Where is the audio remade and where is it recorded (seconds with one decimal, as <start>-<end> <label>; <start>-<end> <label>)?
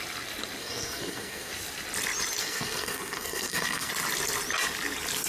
0.0-0.6 recorded; 0.6-1.5 remade; 1.5-2.4 recorded; 2.4-3.9 remade; 3.9-5.3 recorded